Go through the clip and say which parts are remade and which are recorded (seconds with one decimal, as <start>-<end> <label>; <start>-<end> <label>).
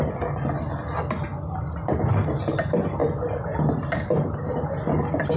0.0-5.4 recorded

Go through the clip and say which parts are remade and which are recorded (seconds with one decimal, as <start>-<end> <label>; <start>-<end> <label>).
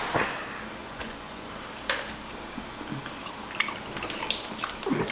0.0-0.8 recorded; 0.8-1.5 remade; 1.5-5.1 recorded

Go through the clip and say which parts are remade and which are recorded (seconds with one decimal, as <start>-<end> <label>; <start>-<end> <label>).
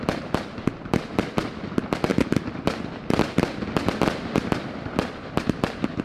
0.0-6.0 remade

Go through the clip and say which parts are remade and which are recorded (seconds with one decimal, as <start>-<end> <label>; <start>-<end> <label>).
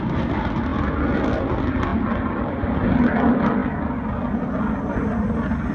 0.0-5.7 recorded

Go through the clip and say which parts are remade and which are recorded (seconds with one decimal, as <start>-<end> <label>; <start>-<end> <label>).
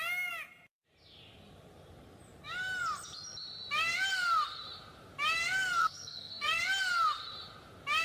0.0-5.8 recorded; 5.8-6.6 remade; 6.6-8.0 recorded